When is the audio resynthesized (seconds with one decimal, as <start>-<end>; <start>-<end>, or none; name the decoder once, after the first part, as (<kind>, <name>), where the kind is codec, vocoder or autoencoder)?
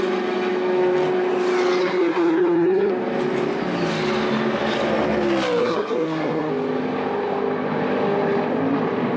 1.8-2.9 (codec, SNAC); 5.6-6.5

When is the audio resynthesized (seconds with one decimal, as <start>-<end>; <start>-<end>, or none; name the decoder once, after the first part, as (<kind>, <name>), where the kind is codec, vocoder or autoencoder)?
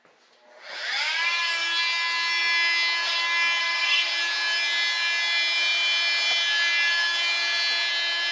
3.6-4.1 (codec, SNAC)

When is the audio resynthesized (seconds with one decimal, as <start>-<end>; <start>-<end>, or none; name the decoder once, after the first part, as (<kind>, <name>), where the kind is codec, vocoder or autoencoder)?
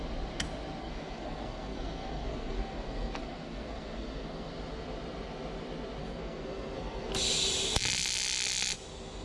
0.8-4.5 (codec, SNAC); 6.0-7.1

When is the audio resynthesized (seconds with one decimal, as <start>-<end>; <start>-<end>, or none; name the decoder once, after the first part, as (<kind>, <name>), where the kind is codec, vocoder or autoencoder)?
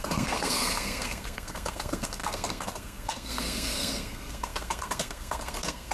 0.0-5.9 (codec, SNAC)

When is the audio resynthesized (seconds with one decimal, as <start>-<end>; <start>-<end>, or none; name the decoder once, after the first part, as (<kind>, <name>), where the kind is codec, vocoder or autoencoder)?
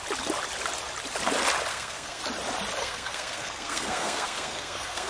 1.7-2.2 (codec, SNAC); 2.8-5.1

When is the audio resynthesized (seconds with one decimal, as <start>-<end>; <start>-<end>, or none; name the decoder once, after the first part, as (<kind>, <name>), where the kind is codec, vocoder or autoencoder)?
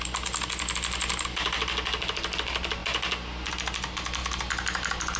none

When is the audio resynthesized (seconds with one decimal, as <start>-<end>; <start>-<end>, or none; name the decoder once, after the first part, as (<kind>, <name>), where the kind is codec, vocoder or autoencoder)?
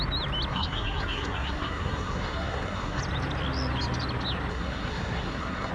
0.5-3.0 (codec, SNAC); 4.5-5.7